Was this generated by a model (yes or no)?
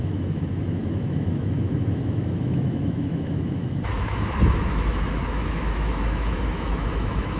yes